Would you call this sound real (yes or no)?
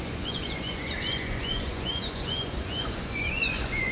no